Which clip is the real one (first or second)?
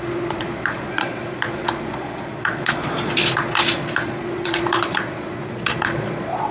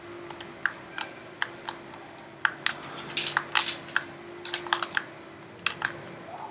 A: second